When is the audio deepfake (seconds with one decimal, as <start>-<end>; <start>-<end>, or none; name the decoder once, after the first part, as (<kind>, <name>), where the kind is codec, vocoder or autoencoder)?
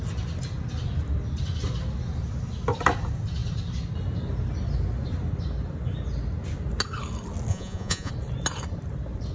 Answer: 7.5-8.1 (vocoder, Vocos)